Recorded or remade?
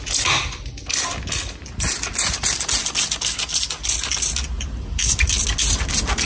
recorded